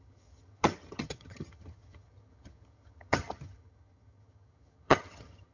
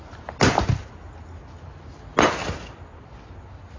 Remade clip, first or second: first